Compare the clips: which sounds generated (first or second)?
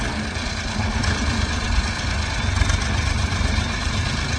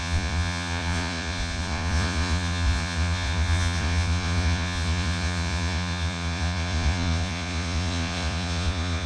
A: second